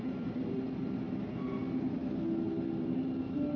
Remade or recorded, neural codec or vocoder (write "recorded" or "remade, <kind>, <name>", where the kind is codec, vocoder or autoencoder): recorded